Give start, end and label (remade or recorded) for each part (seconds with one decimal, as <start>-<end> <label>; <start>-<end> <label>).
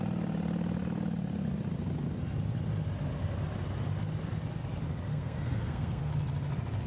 0.0-5.1 recorded; 5.1-6.1 remade; 6.1-6.9 recorded